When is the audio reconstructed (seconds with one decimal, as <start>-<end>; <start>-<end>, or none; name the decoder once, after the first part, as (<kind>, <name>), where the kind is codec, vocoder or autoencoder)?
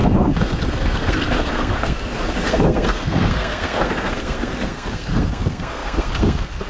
0.0-6.7 (codec, SNAC)